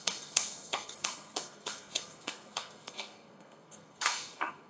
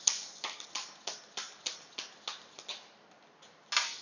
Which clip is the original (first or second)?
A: second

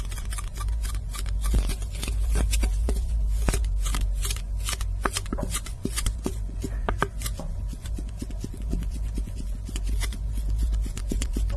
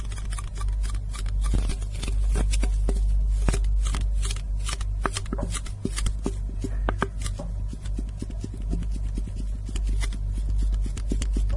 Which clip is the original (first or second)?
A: second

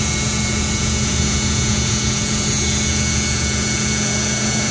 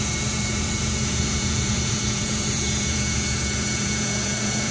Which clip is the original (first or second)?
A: first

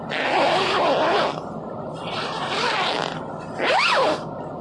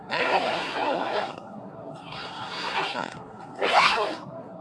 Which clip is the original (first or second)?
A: first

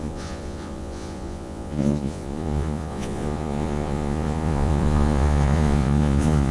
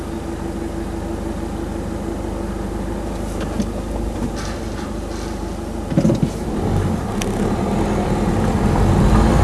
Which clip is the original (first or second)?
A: second